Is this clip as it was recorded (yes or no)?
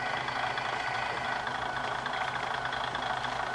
yes